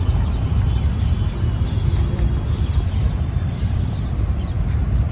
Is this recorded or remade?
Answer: recorded